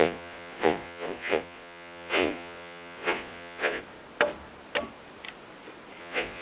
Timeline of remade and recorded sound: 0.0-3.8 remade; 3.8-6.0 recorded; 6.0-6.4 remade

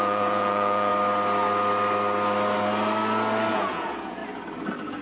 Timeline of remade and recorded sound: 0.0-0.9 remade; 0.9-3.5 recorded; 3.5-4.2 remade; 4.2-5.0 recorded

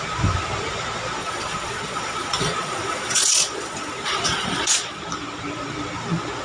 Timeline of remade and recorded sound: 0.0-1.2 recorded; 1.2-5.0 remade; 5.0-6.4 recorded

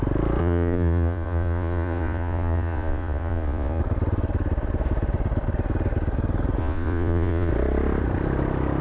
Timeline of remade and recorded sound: 0.0-0.4 recorded; 0.4-3.8 remade; 3.8-6.6 recorded; 6.6-7.5 remade; 7.5-8.8 recorded

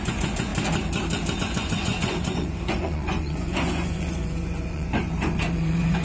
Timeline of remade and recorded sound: 0.0-0.5 remade; 0.5-1.4 recorded; 1.4-6.0 remade

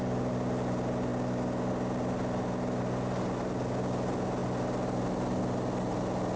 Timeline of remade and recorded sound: 0.0-6.4 recorded

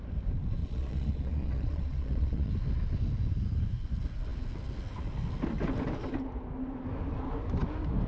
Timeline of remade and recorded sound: 0.0-0.6 recorded; 0.6-2.5 remade; 2.5-8.1 recorded